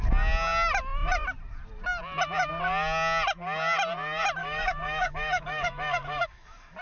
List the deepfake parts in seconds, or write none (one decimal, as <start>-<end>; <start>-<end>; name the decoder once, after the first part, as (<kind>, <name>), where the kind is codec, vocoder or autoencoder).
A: 4.4-6.8 (codec, DAC)